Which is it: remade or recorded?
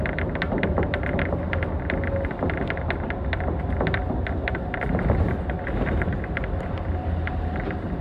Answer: recorded